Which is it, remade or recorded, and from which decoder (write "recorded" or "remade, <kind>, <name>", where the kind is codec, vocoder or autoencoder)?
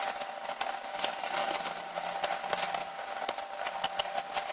recorded